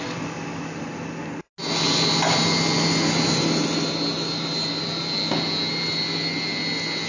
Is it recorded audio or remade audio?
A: recorded